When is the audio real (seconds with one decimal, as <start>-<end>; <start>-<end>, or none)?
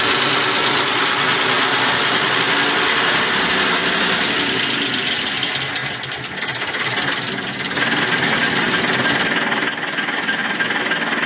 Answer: 0.0-11.3